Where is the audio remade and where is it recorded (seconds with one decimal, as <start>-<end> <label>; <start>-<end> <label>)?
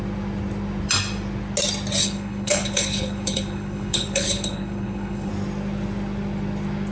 0.0-2.0 recorded; 2.0-5.3 remade; 5.3-6.9 recorded